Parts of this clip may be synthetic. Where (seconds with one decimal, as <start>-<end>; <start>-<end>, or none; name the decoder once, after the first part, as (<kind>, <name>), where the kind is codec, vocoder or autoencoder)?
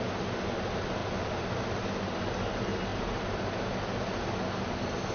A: 2.9-3.8 (vocoder, BigVGAN v2)